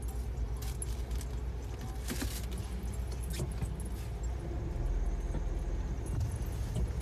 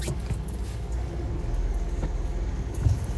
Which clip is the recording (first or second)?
first